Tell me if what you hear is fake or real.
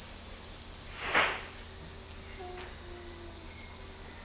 real